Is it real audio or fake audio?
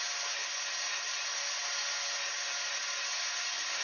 real